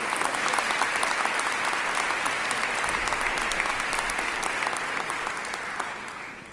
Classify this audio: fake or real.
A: real